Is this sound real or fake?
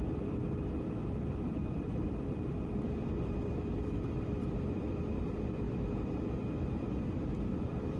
fake